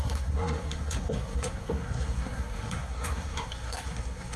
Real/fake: fake